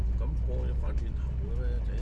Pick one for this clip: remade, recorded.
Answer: recorded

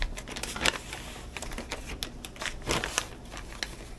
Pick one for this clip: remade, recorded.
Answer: recorded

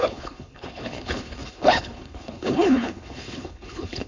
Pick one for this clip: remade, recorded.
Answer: remade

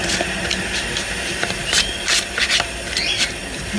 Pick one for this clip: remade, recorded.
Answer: recorded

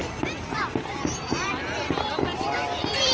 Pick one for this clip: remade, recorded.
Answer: recorded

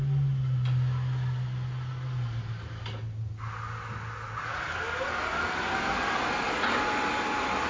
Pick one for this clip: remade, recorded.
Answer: recorded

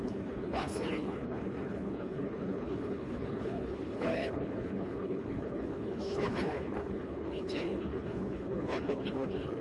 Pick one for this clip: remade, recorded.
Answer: remade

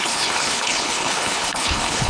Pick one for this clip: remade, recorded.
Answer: remade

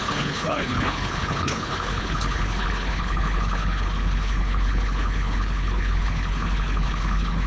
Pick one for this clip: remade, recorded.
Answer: remade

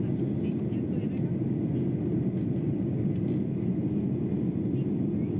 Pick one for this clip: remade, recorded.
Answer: recorded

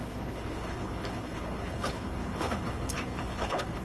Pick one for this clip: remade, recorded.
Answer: remade